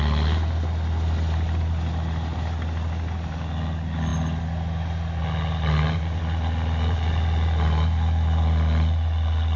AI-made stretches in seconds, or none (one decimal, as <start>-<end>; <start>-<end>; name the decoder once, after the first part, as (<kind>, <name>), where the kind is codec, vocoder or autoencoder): none